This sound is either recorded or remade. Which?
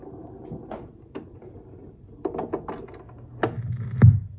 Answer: recorded